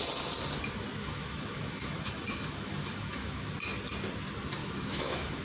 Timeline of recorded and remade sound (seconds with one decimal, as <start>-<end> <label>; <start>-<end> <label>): 0.0-1.0 recorded; 1.0-3.5 remade; 3.5-4.6 recorded; 4.6-5.4 remade